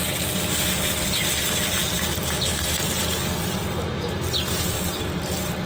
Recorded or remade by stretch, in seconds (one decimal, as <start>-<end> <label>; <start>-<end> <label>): 0.0-5.7 recorded

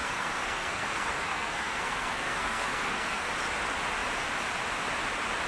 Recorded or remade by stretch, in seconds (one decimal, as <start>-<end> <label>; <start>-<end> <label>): 0.0-3.3 remade; 3.3-5.5 recorded

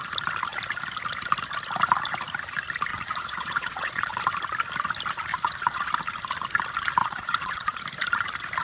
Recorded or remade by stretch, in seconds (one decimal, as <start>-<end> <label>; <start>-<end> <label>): 0.0-2.9 recorded; 2.9-4.2 remade; 4.2-5.3 recorded; 5.3-5.9 remade; 5.9-7.0 recorded; 7.0-7.8 remade; 7.8-8.6 recorded

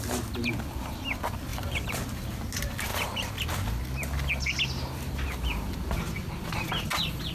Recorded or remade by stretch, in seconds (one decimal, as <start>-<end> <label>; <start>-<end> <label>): 0.0-7.3 recorded

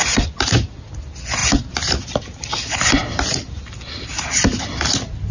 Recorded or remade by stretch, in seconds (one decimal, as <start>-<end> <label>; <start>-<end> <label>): 0.0-5.3 recorded

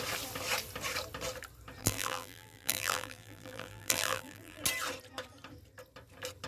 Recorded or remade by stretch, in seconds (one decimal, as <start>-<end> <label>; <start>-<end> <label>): 0.0-1.8 recorded; 1.8-4.6 remade; 4.6-6.5 recorded